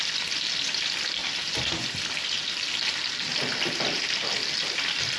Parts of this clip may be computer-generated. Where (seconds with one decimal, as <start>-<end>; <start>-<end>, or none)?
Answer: none